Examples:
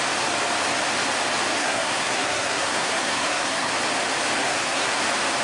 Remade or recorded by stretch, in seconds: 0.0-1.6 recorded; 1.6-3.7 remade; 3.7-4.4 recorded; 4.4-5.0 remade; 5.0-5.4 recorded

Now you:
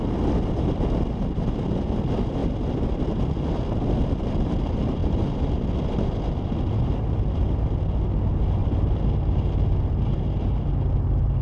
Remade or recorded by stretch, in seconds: 0.0-5.0 recorded; 5.0-5.7 remade; 5.7-8.6 recorded; 8.6-10.7 remade; 10.7-11.4 recorded

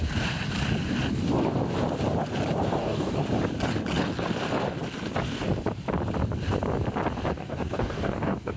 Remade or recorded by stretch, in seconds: 0.0-2.8 recorded; 2.8-3.2 remade; 3.2-7.3 recorded; 7.3-8.6 remade

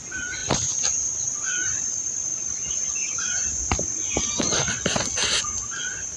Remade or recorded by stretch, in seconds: 0.0-0.4 recorded; 0.4-1.2 remade; 1.2-6.2 recorded

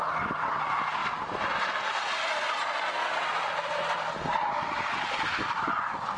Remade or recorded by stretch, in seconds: 0.0-6.2 recorded

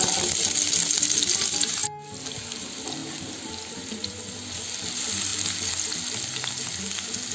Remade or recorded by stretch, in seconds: 0.0-7.3 recorded